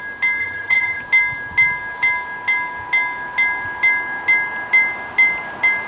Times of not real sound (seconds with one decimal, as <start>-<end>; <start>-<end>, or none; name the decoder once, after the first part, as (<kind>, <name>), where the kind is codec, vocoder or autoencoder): 0.4-1.0 (vocoder, HiFi-GAN)